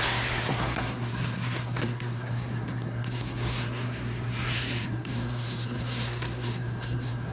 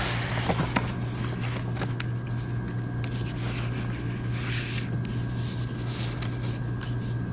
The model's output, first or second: first